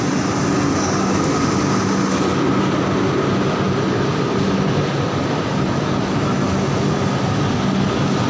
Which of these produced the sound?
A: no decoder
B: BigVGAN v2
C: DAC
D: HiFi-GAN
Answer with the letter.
A